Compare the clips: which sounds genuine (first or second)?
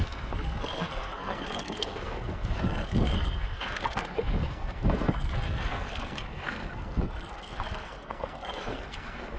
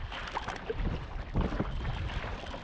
second